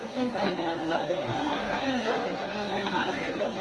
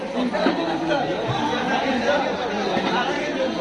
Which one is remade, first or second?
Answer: first